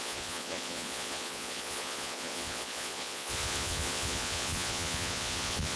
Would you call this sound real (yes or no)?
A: no